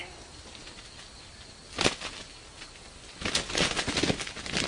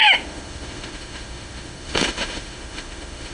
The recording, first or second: first